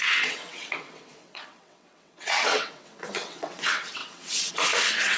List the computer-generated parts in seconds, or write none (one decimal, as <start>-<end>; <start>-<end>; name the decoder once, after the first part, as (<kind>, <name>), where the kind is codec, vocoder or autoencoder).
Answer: 0.0-5.2 (vocoder, WaveNeXt)